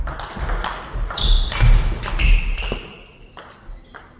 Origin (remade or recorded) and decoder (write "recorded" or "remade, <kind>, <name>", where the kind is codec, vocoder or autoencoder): recorded